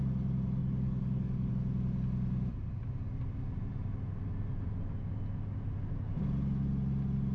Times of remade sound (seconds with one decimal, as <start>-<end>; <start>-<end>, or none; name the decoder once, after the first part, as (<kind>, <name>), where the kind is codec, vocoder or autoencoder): 0.6-1.5 (codec, DAC)